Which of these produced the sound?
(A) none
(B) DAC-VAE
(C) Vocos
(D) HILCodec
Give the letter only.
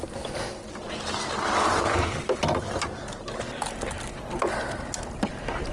A